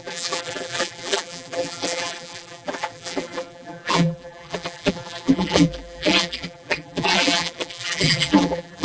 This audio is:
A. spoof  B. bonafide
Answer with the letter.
A